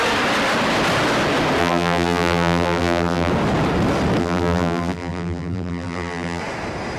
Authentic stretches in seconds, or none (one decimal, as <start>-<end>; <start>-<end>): 0.0-1.6; 3.3-4.2; 6.4-7.0